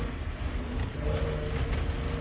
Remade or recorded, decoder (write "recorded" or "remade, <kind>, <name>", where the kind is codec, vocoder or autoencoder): recorded